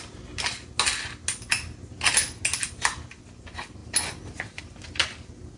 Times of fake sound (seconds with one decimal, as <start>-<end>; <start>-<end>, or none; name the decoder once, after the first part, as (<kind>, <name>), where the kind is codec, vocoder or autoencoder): none